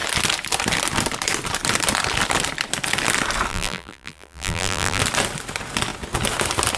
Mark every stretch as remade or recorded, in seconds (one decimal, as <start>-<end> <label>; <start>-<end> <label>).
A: 0.0-3.5 recorded; 3.5-5.0 remade; 5.0-6.8 recorded